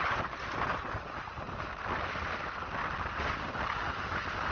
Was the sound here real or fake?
real